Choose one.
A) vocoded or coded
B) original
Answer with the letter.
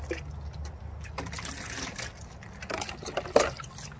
B